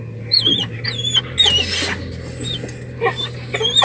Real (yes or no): yes